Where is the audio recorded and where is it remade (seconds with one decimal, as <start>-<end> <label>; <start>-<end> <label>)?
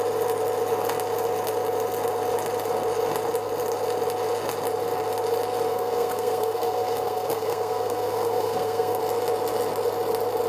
0.0-5.7 recorded; 5.7-9.0 remade; 9.0-10.5 recorded